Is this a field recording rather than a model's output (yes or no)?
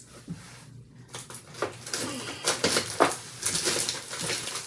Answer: yes